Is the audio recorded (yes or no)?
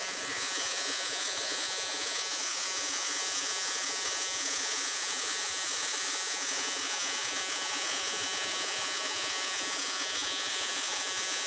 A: no